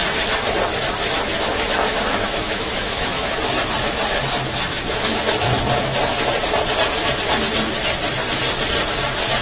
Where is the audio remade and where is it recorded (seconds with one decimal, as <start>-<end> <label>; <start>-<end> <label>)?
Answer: 0.0-1.0 recorded; 1.0-3.4 remade; 3.4-4.7 recorded; 4.7-6.2 remade; 6.2-9.4 recorded